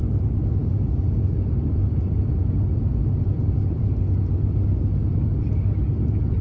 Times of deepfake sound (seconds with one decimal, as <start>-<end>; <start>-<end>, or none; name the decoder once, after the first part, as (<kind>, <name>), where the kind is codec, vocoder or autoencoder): none